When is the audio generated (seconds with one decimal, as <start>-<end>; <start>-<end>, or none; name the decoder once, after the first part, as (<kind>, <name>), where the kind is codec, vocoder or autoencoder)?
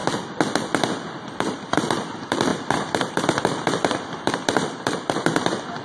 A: 1.1-5.8 (vocoder, BigVGAN v2)